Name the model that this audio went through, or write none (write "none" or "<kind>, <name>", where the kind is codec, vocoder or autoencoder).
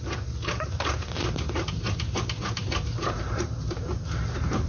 none